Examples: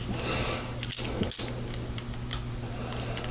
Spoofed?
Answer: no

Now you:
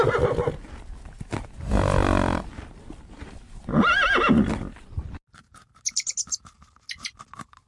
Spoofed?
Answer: no